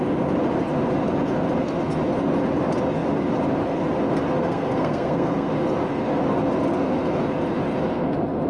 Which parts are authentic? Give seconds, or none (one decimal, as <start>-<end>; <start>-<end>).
0.0-4.4; 5.5-8.5